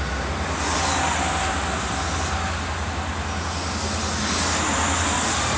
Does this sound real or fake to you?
real